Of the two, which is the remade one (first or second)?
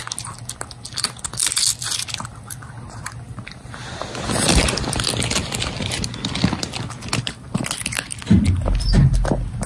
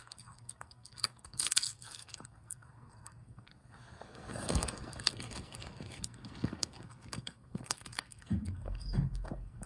second